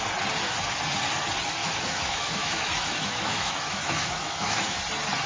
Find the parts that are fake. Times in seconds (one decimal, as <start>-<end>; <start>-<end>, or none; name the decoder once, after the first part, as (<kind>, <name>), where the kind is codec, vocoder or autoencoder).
1.6-4.8 (autoencoder, DAC-VAE)